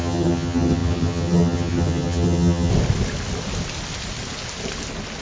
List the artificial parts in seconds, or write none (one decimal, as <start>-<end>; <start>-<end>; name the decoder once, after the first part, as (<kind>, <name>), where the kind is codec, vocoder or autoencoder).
0.0-2.7 (vocoder, HiFi-GAN)